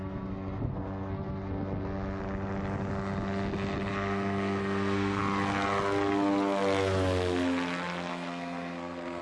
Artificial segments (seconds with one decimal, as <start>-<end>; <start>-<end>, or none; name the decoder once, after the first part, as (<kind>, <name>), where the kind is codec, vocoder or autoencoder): 0.0-2.2 (codec, SNAC); 3.9-5.2; 8.1-9.2